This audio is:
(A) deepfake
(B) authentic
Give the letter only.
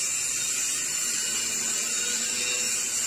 B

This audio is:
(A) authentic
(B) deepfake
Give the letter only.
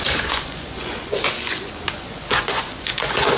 B